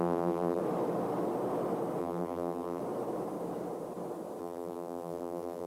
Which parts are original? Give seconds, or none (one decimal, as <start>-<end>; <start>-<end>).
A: 0.6-2.0; 2.8-4.4